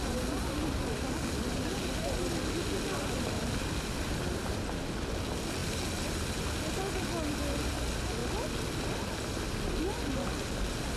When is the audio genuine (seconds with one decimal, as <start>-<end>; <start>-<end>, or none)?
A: 0.0-11.0